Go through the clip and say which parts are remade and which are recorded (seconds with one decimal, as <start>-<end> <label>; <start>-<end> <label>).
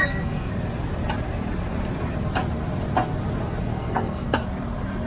0.0-0.5 remade; 0.5-3.6 recorded; 3.6-4.4 remade; 4.4-5.1 recorded